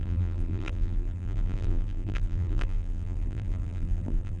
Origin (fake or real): fake